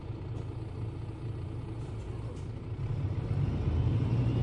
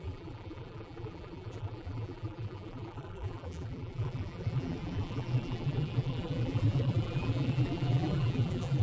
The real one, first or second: first